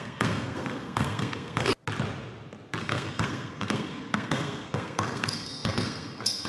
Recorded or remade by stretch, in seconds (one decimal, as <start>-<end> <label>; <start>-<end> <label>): 0.0-1.7 remade; 1.7-2.8 recorded; 2.8-6.5 remade